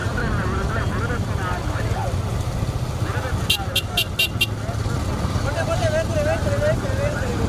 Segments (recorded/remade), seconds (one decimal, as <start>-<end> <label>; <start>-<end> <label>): 0.0-6.1 recorded; 6.1-7.5 remade